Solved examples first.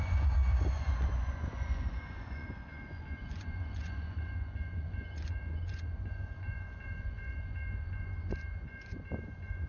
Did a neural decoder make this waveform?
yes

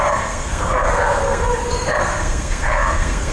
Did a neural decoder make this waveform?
yes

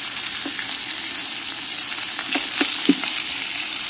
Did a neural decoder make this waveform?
no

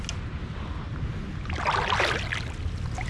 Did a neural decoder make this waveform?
no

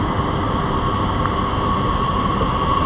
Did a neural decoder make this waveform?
no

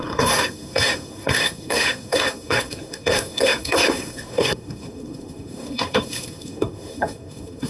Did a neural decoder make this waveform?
yes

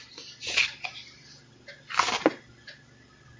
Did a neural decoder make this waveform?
no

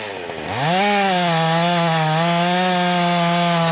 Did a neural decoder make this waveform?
no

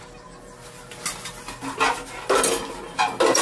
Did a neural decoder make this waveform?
no